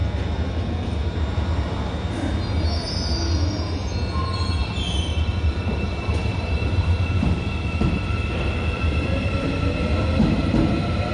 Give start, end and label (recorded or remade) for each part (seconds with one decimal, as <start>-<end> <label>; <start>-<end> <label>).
0.0-4.2 recorded; 4.2-11.1 remade